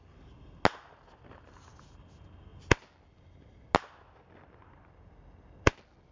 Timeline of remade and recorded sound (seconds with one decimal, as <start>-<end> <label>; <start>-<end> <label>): 0.0-6.1 recorded